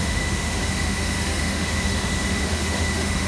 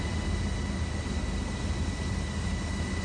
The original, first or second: second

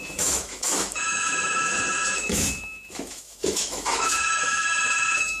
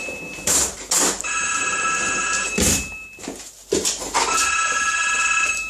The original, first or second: second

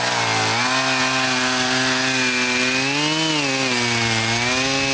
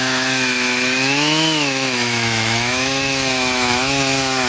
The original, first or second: first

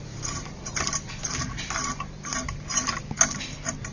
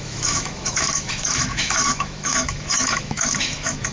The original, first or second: first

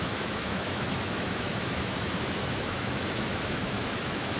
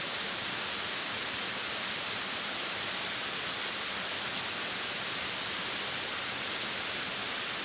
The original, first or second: second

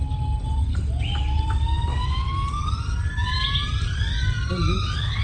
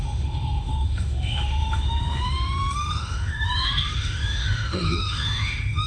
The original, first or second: first